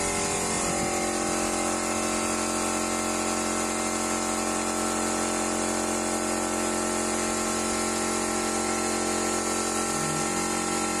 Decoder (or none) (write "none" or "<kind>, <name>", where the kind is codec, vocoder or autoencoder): none